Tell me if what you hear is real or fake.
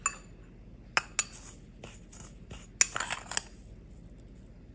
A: real